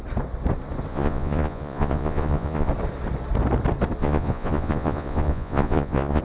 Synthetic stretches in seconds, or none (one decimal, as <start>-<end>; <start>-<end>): 0.9-2.7; 4.0-6.2